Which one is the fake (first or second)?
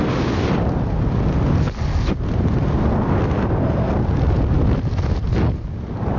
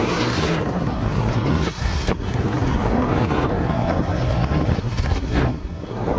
second